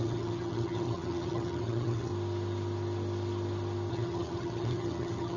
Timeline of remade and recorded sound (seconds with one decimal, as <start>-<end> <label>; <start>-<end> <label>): 0.0-2.1 remade; 2.1-3.9 recorded; 3.9-5.4 remade